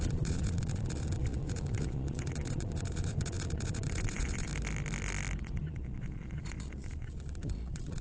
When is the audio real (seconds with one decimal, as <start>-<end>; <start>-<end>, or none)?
4.5-5.4